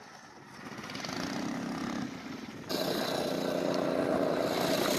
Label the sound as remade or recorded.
recorded